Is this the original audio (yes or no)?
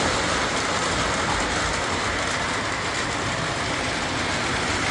yes